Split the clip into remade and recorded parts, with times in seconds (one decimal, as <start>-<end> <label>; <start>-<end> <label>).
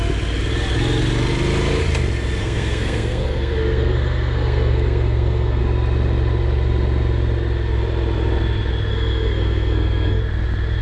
0.0-2.4 recorded; 2.4-5.6 remade; 5.6-8.9 recorded; 8.9-10.2 remade; 10.2-10.8 recorded